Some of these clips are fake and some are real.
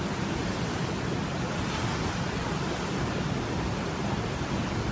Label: real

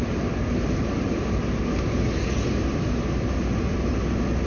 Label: real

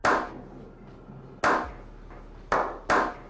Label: real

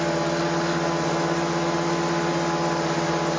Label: real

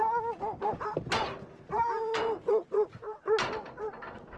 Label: real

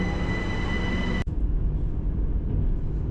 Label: real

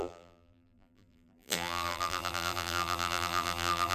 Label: fake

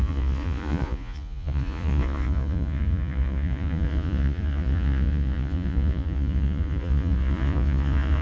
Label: fake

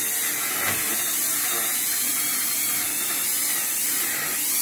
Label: real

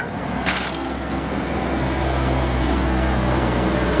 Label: fake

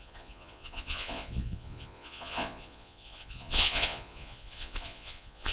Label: fake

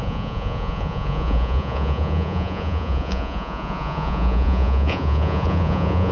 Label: fake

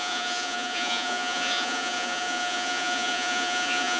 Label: fake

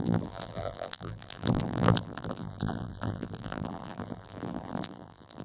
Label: fake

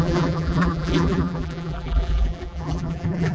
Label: fake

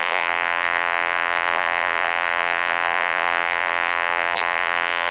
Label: fake